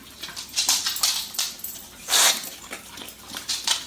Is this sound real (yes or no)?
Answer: no